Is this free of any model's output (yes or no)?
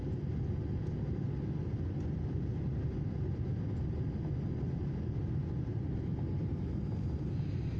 yes